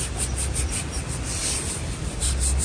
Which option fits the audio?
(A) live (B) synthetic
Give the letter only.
A